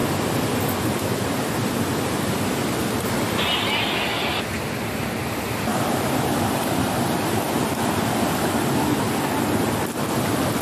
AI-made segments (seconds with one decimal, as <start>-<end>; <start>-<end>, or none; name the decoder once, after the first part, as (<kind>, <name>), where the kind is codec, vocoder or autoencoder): 5.7-7.4 (vocoder, BigVGAN v2)